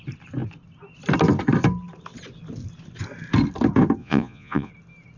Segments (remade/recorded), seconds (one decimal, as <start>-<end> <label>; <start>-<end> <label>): 0.0-4.0 recorded; 4.0-4.7 remade; 4.7-5.2 recorded